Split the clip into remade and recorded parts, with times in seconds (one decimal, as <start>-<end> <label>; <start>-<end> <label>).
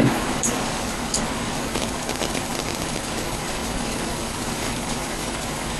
0.0-5.8 remade